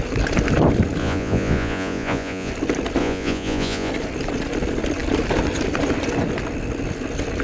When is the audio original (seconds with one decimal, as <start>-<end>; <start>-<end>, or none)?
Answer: 0.0-1.0; 2.5-3.0; 3.9-7.4

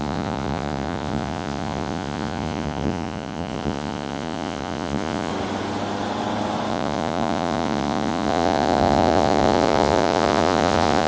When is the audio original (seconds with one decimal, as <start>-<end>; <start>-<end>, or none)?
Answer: 5.3-6.7